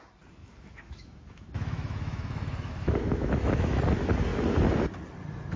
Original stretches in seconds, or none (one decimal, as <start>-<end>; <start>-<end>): 0.0-0.4; 3.8-5.6